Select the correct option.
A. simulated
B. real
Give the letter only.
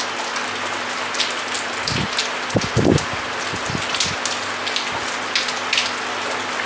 B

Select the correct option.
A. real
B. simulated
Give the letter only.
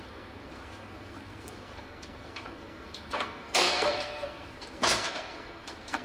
B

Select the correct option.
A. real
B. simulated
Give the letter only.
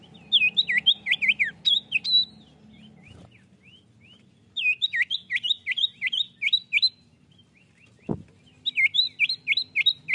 A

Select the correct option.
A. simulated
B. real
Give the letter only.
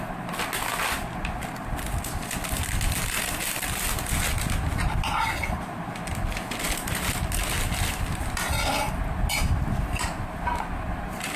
B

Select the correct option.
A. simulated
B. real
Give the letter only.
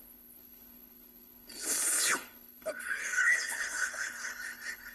A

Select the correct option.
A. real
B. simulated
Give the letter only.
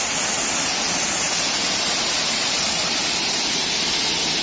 A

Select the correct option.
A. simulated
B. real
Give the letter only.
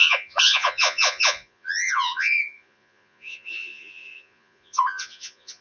A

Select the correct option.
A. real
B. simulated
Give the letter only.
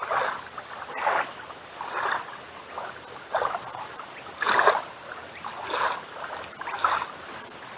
A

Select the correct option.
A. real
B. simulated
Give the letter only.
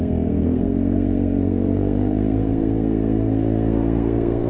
B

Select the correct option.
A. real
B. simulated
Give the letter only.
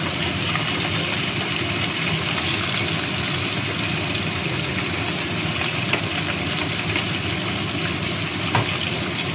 A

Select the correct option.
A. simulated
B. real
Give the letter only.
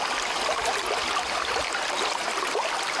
B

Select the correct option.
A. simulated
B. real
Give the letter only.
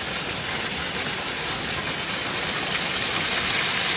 B